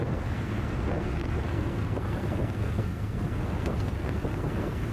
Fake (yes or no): yes